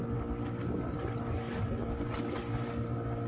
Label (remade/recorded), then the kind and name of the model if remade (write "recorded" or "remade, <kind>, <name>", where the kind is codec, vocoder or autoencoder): recorded